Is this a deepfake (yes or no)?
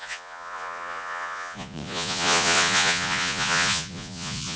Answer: yes